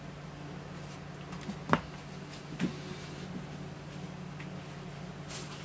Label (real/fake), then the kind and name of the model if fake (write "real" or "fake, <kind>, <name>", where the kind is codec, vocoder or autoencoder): real